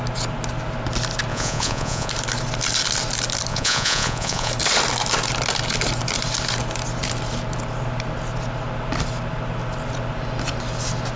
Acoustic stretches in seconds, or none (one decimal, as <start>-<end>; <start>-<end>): 0.0-1.3; 2.1-3.5; 4.5-11.2